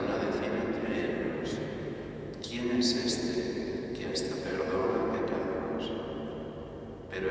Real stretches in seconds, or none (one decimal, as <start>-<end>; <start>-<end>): 0.0-0.8; 5.2-7.3